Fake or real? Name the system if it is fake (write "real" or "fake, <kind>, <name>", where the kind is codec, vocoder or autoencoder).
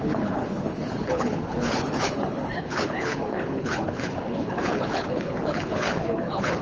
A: fake, codec, HILCodec